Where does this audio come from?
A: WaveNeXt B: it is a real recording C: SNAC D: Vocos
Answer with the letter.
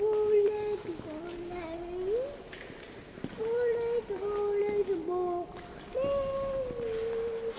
B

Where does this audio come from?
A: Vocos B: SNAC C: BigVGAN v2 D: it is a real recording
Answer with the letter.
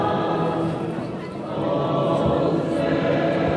D